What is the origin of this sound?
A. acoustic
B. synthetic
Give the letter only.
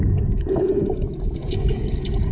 B